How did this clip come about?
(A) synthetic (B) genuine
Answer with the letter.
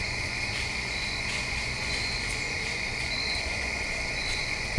A